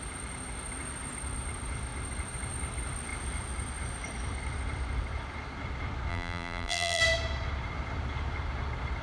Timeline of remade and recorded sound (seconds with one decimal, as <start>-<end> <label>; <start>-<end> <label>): 0.0-6.1 recorded; 6.1-7.0 remade; 7.0-9.0 recorded